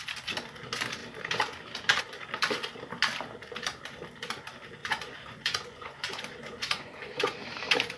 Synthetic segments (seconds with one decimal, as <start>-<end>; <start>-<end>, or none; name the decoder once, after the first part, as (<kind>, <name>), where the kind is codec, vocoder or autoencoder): 4.8-7.4 (vocoder, Vocos)